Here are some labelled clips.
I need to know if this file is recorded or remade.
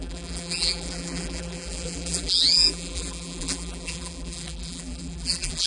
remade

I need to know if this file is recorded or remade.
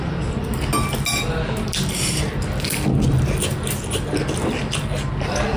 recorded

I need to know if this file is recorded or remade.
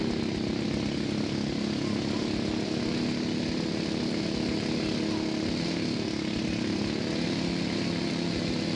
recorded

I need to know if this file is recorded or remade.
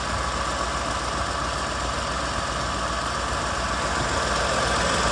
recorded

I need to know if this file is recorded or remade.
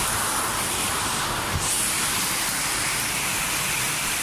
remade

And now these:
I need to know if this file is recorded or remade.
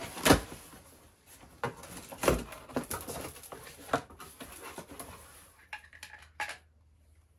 recorded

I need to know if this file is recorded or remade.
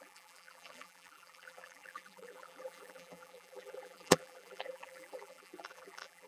remade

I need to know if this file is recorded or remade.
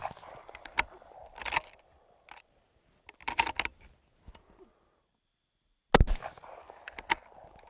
recorded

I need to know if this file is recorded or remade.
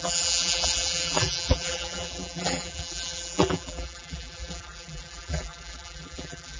remade